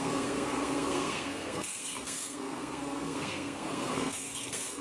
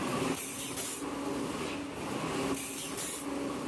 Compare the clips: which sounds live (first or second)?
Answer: second